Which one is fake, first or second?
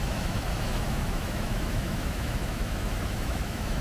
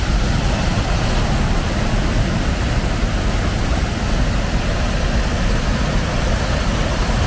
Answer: first